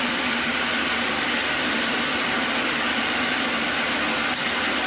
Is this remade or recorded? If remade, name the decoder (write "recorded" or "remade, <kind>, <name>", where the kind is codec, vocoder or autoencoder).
remade, vocoder, BigVGAN v2